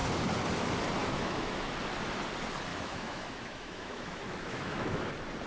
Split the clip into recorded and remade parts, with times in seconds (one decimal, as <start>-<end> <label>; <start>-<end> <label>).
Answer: 0.0-1.0 recorded; 1.0-1.7 remade; 1.7-2.7 recorded; 2.7-5.1 remade; 5.1-5.5 recorded